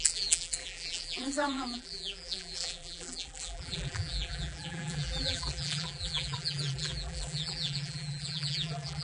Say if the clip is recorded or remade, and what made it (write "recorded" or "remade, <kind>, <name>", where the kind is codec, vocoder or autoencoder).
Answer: remade, vocoder, BigVGAN v2